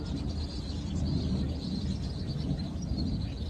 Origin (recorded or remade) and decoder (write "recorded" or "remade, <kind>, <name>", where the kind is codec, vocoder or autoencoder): recorded